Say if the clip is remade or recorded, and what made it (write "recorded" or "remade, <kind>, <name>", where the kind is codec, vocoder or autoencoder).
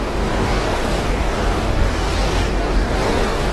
remade, codec, DAC